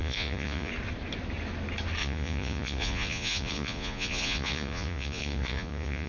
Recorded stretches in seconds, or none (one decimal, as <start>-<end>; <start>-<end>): 0.7-2.0